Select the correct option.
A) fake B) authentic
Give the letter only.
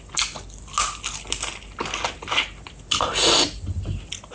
B